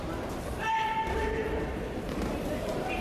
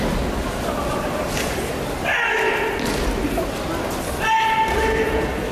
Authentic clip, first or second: second